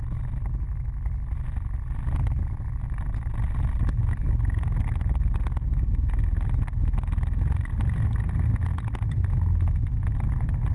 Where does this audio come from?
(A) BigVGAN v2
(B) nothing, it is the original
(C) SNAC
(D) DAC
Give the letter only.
B